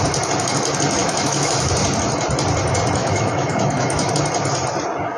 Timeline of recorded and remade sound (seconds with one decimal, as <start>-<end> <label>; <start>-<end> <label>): 0.0-1.0 recorded; 1.0-1.7 remade; 1.7-3.0 recorded; 3.0-4.1 remade; 4.1-5.2 recorded